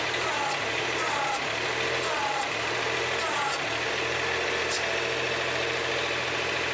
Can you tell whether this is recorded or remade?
recorded